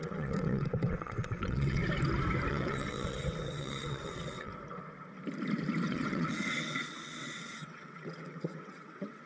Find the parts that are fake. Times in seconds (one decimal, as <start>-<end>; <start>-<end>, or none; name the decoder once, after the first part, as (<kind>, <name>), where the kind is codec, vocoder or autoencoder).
0.0-1.8 (vocoder, WaveNeXt); 2.5-4.5; 5.8-9.3